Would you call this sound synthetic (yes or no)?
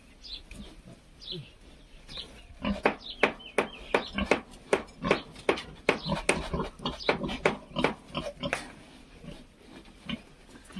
no